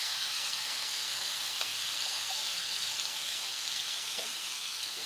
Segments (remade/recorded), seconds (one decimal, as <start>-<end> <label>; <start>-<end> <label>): 0.0-5.1 remade